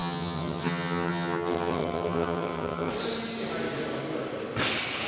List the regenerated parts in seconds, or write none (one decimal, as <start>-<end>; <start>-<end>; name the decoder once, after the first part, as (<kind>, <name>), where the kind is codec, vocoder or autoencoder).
0.0-2.9 (vocoder, HiFi-GAN)